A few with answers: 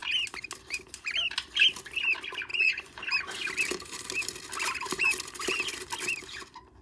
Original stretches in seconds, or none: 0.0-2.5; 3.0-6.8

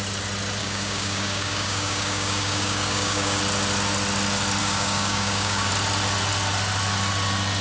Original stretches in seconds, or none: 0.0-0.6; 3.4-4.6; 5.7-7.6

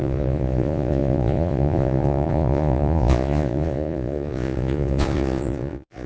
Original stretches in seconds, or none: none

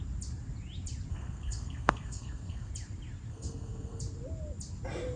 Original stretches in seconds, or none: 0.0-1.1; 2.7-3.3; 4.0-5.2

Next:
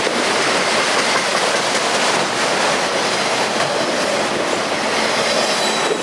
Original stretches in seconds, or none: 0.0-6.0